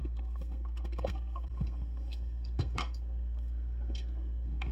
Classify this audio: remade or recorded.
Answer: remade